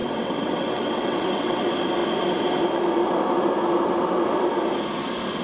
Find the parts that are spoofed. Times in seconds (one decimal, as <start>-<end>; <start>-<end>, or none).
0.0-1.6